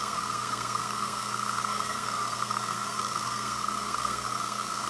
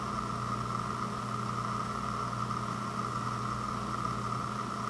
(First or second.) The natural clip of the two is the second